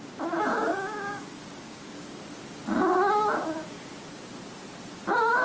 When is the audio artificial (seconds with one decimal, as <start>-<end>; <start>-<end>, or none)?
0.5-2.2